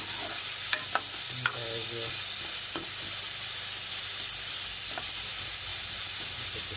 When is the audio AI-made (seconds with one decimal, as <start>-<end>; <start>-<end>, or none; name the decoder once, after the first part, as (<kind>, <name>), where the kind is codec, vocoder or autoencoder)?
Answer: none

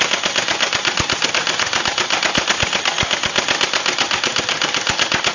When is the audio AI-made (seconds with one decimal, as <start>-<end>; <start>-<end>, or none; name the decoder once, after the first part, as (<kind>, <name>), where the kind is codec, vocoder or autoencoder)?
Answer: none

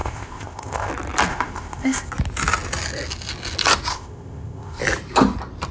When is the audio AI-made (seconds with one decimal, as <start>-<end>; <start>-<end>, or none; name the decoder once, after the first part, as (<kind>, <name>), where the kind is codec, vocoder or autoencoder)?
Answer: 0.0-0.9 (codec, ZipCodec); 1.3-2.1; 3.9-4.8

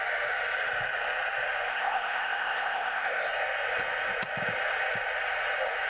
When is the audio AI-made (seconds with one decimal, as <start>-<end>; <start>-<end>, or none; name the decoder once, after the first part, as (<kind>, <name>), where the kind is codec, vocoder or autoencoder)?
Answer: 1.7-3.3 (codec, ZipCodec)

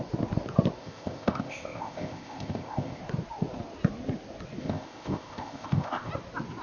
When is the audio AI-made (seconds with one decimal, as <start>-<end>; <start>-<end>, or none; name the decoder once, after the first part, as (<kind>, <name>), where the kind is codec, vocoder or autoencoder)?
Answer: 0.8-3.0 (codec, ZipCodec); 4.6-6.1

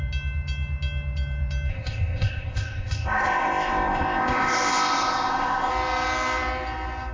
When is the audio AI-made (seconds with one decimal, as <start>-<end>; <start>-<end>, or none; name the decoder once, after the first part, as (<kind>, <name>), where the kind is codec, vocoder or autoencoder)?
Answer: 1.7-5.7 (codec, ZipCodec)

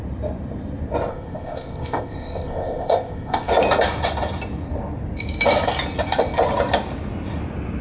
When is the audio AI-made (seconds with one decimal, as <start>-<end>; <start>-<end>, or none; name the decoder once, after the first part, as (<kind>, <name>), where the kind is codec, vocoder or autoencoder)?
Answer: 1.1-3.5 (codec, ZipCodec)

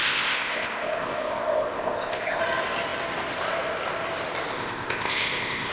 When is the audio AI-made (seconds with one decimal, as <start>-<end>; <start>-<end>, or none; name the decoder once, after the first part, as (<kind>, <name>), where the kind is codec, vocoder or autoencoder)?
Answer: 0.0-2.4 (codec, ZipCodec); 4.5-5.7